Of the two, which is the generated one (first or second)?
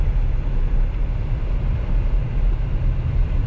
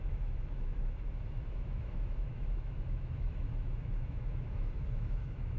second